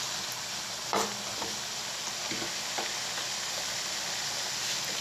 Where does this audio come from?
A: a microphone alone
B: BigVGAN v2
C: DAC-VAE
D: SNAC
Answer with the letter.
A